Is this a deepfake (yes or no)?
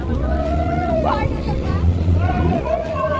yes